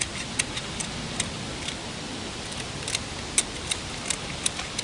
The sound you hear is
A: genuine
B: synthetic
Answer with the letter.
A